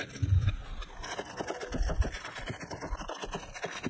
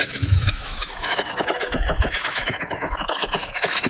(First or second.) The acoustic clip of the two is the first